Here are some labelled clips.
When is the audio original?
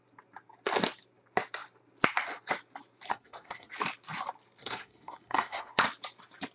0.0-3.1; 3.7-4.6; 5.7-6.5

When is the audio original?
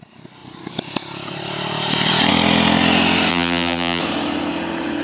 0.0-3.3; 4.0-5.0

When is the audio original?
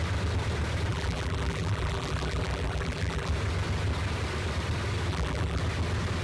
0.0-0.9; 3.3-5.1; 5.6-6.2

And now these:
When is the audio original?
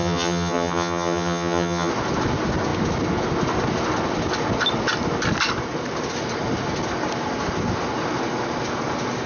1.9-9.3